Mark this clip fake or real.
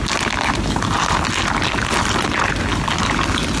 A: real